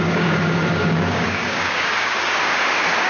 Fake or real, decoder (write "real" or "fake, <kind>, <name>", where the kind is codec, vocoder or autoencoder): fake, codec, DAC